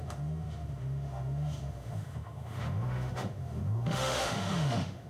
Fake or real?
fake